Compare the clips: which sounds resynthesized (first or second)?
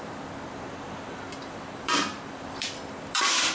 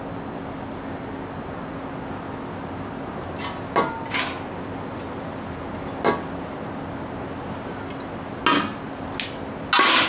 first